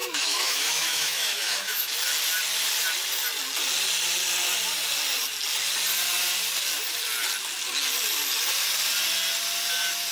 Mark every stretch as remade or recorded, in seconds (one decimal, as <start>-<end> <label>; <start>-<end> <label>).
0.0-1.9 remade; 1.9-10.1 recorded